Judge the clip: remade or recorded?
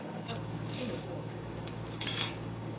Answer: remade